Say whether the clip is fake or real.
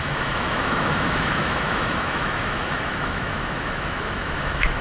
fake